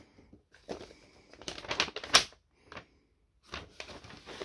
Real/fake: real